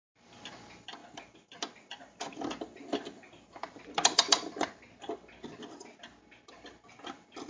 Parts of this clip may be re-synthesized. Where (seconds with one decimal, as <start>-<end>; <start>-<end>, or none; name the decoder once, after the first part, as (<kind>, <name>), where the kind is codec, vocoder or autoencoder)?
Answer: 0.0-1.0 (vocoder, BigVGAN v2); 1.9-2.3; 3.6-7.5